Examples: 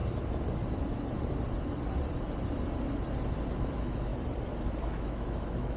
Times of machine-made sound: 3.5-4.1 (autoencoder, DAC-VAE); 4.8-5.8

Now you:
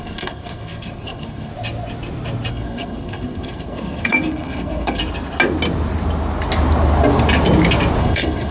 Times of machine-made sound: 0.0-1.5 (codec, SNAC); 2.5-5.0; 8.0-8.5

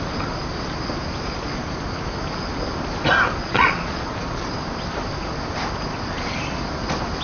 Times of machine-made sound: 3.4-4.1 (vocoder, Vocos)